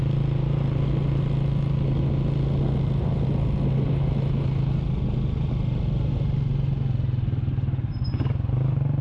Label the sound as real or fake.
real